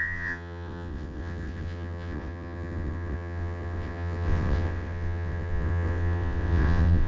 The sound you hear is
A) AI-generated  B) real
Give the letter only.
A